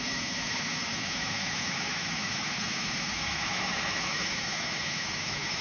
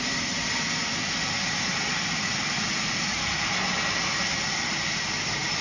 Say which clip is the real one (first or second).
second